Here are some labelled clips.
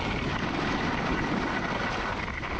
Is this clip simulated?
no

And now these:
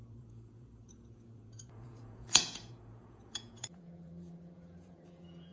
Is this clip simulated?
yes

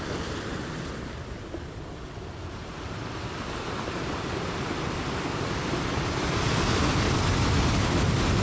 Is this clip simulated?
no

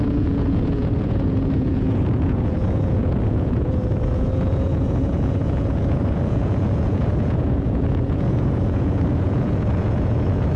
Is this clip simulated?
yes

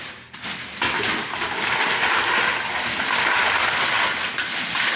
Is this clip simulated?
no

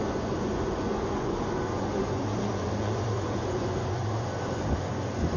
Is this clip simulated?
yes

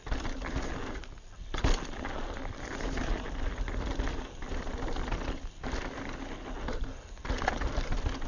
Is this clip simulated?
no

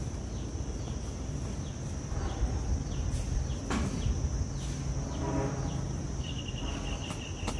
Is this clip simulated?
no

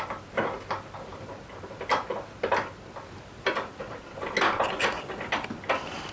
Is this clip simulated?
no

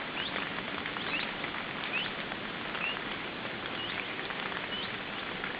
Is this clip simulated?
no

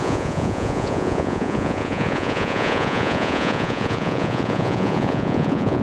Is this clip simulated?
yes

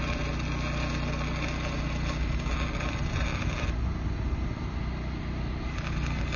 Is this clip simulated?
no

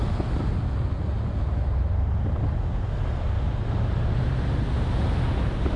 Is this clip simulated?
no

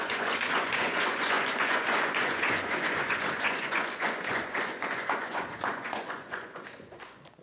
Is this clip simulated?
yes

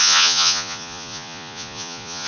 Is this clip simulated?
yes